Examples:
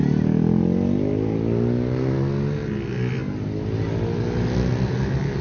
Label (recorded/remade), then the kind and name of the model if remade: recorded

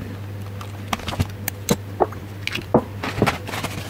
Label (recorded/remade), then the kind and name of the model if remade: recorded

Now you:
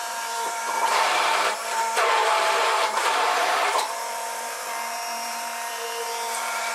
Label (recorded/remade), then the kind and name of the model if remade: remade, vocoder, BigVGAN v2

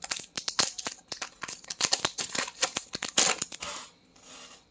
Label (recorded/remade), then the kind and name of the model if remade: recorded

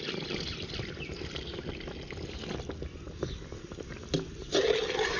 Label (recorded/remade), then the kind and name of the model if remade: recorded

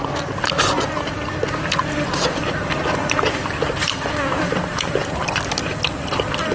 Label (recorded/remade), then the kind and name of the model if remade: remade, vocoder, BigVGAN v2